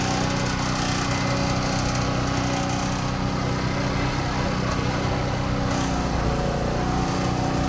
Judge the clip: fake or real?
real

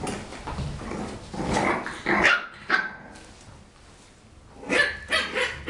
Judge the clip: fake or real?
real